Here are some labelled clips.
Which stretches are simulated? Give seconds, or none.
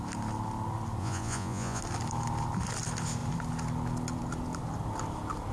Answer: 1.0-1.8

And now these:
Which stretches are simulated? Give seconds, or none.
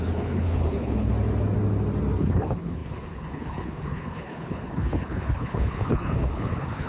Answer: 0.0-1.1; 2.2-6.9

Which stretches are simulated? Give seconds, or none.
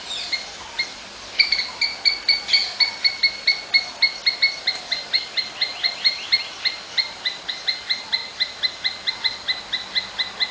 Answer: 5.7-6.3; 6.9-7.5; 8.2-9.1